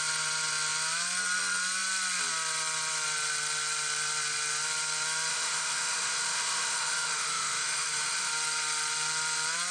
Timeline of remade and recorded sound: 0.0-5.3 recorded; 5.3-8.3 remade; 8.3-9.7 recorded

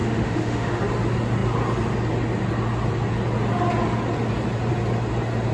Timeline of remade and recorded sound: 0.0-0.8 remade; 0.8-5.5 recorded

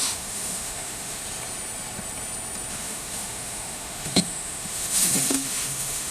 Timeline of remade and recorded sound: 0.0-1.2 remade; 1.2-2.7 recorded; 2.7-6.1 remade

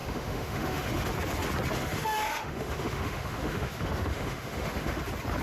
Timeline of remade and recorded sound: 0.0-1.1 remade; 1.1-1.8 recorded; 1.8-5.0 remade; 5.0-5.4 recorded

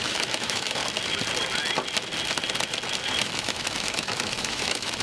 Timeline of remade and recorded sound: 0.0-0.8 remade; 0.8-3.2 recorded; 3.2-5.0 remade

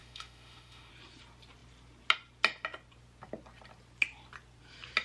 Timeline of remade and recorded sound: 0.0-0.9 remade; 0.9-5.0 recorded

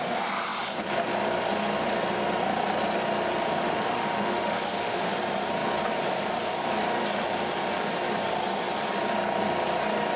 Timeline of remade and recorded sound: 0.0-3.6 recorded; 3.6-5.0 remade; 5.0-10.2 recorded

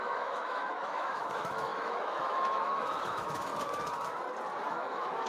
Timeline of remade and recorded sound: 0.0-3.5 remade; 3.5-4.7 recorded; 4.7-5.3 remade